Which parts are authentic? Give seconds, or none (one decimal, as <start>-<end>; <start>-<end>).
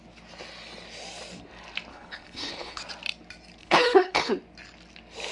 0.0-1.9; 2.8-3.6; 4.3-5.3